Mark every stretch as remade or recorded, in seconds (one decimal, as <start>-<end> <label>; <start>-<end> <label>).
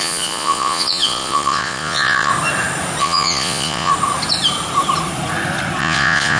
0.0-2.3 remade; 2.3-3.0 recorded; 3.0-3.9 remade; 3.9-5.8 recorded; 5.8-6.4 remade